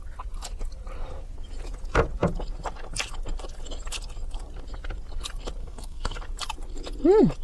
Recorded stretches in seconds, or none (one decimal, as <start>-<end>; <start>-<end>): 0.0-5.6; 6.2-7.4